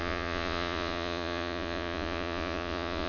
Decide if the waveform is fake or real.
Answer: fake